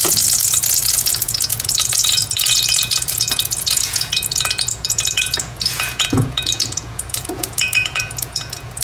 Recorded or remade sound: remade